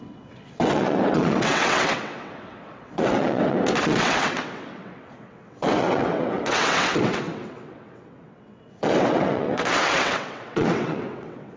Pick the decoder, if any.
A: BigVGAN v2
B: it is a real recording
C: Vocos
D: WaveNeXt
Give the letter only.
D